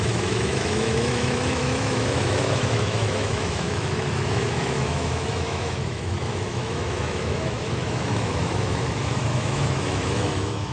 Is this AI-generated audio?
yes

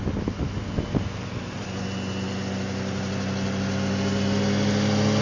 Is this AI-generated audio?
no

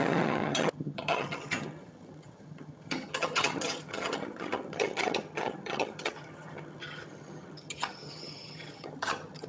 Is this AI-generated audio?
yes